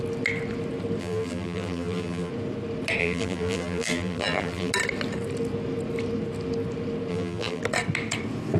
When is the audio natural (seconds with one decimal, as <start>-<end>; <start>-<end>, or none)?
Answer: 0.0-1.0; 2.3-3.0; 4.7-7.1; 7.6-8.6